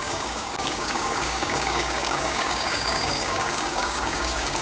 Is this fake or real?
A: fake